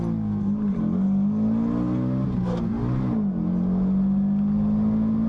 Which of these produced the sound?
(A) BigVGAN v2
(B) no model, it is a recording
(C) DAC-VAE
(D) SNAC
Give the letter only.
B